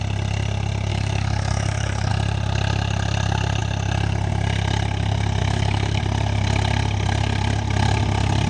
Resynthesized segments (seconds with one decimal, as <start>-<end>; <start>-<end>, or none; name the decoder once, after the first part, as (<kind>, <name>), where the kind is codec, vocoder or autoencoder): 0.9-2.1 (codec, DAC); 5.4-6.0